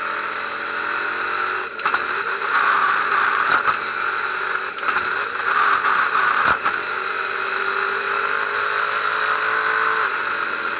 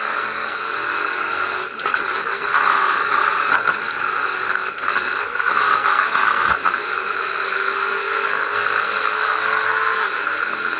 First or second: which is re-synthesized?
second